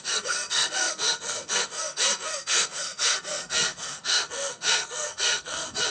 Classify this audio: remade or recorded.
remade